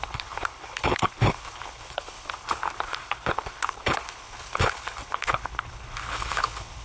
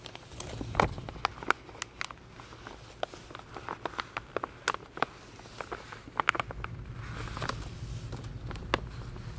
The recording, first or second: second